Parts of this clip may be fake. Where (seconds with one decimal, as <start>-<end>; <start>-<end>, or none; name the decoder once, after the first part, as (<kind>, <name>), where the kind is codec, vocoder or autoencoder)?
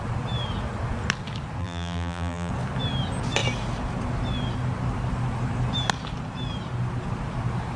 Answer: 1.6-2.5 (vocoder, BigVGAN v2)